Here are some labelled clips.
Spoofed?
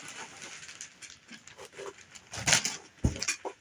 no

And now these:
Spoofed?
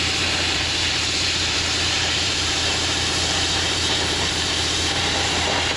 yes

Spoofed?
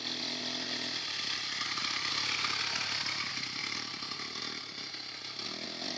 yes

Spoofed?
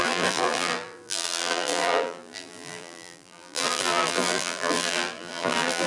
yes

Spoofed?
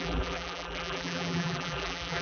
yes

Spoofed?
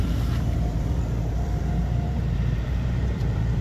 yes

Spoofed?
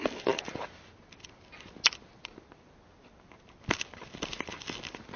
no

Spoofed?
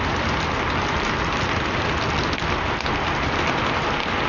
no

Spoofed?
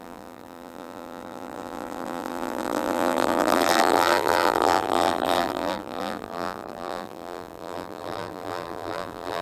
yes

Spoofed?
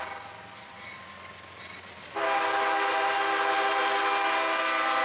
no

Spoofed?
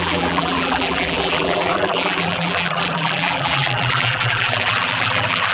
yes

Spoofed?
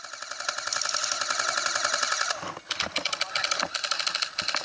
no